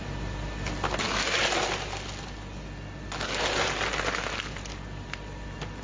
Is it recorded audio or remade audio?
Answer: recorded